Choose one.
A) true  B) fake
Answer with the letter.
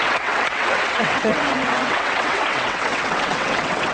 B